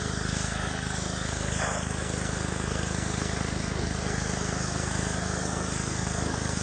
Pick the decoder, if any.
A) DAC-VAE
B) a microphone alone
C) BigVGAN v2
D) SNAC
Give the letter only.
D